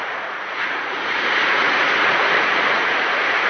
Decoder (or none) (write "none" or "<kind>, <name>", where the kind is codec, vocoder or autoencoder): vocoder, Vocos